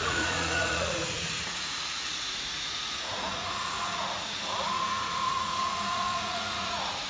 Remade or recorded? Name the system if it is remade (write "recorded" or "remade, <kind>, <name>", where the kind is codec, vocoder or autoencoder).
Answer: remade, vocoder, Vocos